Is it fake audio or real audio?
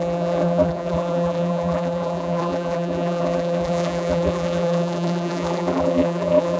fake